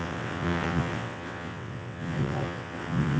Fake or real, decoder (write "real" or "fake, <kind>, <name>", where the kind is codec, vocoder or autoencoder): fake, vocoder, WaveNeXt